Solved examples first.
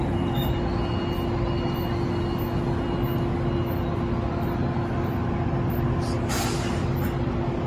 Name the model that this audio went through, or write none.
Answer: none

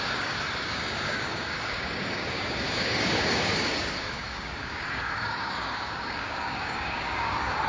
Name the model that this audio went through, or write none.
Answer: codec, DAC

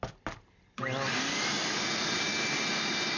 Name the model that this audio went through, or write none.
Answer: none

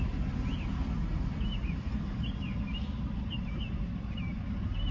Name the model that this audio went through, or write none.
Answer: none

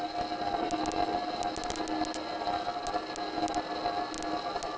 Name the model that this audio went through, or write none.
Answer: none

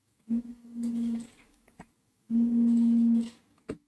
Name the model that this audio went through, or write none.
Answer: codec, DAC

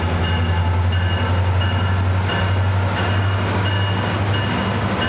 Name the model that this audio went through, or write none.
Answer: none